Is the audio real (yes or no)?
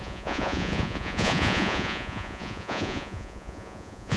no